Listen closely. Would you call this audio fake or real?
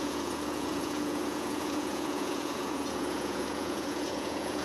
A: fake